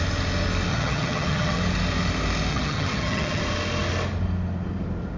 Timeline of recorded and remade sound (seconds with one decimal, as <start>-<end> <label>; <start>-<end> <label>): 0.0-0.7 recorded; 0.7-1.6 remade; 1.6-2.5 recorded; 2.5-3.4 remade; 3.4-5.2 recorded